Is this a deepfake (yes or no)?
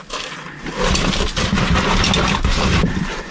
no